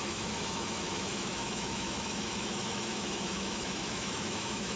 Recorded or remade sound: remade